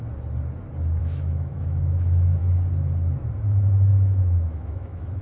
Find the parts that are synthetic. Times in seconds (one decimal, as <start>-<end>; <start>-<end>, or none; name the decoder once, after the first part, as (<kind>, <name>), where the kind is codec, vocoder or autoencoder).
1.0-2.4 (autoencoder, DAC-VAE); 3.9-5.2